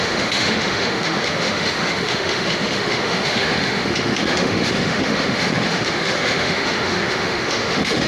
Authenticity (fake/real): fake